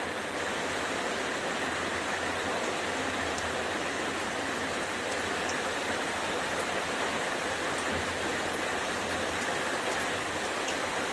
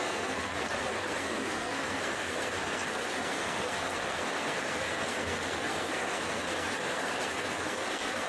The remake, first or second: second